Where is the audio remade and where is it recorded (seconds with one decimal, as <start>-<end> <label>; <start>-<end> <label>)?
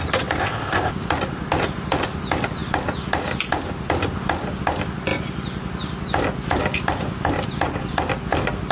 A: 0.0-0.4 recorded; 0.4-0.9 remade; 0.9-8.7 recorded